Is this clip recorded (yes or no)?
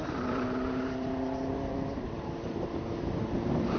no